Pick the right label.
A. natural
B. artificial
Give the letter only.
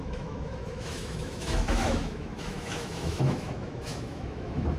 B